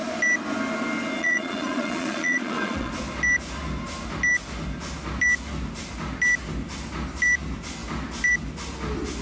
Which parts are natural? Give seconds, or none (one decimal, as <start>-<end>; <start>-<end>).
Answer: 0.0-1.2; 2.9-9.2

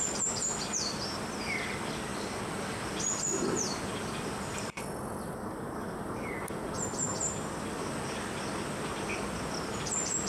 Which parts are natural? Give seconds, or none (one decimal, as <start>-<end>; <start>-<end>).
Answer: 0.0-10.3